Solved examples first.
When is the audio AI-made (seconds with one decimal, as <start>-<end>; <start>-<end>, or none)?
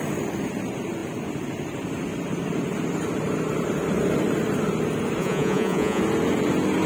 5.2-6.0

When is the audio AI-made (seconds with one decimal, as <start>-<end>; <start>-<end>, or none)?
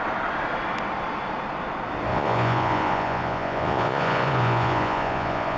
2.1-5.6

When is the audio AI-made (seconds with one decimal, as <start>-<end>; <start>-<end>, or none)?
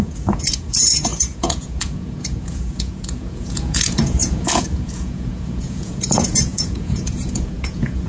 0.0-8.1